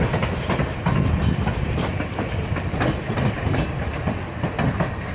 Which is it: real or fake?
real